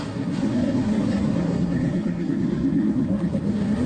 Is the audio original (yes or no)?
no